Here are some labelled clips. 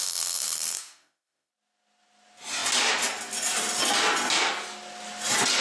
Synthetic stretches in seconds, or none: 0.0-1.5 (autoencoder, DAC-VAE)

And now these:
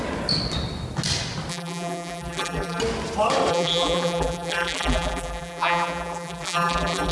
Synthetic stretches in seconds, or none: 1.5-2.8 (vocoder, BigVGAN v2); 3.5-7.1

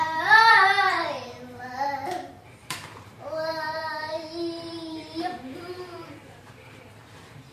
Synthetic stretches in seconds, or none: 0.0-7.5 (vocoder, BigVGAN v2)

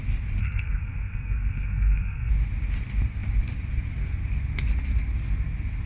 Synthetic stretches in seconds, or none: 0.4-2.3 (codec, SNAC)

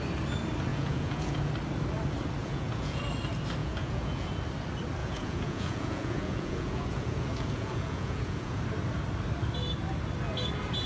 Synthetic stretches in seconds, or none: 0.7-1.5 (vocoder, Vocos); 2.4-3.0; 3.6-4.4; 5.0-8.6

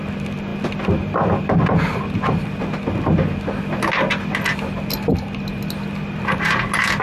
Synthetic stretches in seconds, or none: none

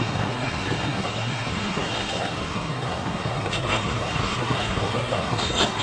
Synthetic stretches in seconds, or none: 0.0-5.8 (codec, SNAC)

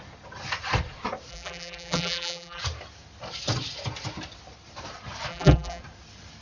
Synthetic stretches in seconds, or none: 1.3-2.6 (vocoder, BigVGAN v2); 5.3-5.8